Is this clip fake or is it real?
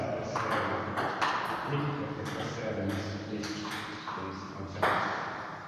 real